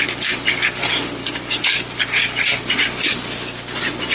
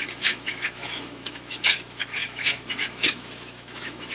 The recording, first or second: first